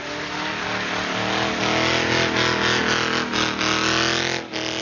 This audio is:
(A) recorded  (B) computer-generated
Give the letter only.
A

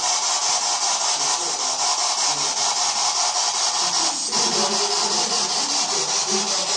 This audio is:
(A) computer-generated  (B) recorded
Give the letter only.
B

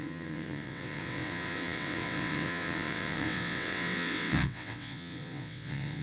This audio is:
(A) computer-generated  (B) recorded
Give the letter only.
A